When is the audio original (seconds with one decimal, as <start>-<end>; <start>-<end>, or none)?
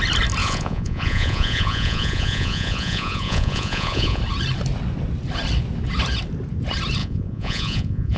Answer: 0.0-0.4; 4.2-7.0